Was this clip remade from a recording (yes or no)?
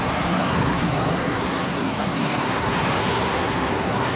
yes